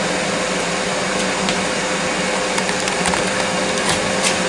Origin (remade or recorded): recorded